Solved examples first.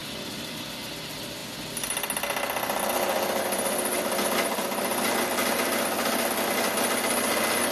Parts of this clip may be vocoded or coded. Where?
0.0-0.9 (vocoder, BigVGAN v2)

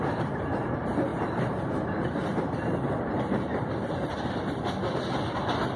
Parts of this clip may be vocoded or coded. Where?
1.1-4.6 (vocoder, BigVGAN v2)

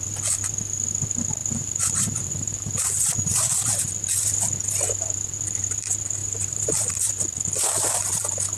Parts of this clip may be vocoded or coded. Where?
1.4-3.8 (vocoder, BigVGAN v2); 6.2-6.9

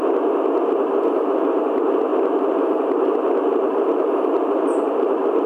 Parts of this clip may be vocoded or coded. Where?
2.1-5.5 (vocoder, BigVGAN v2)

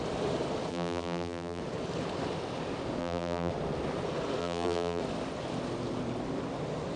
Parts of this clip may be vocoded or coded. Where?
0.7-1.6 (vocoder, BigVGAN v2); 3.0-3.5; 4.4-5.0

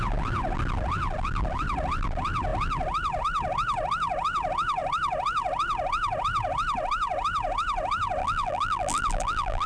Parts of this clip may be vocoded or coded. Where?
8.2-9.7 (vocoder, BigVGAN v2)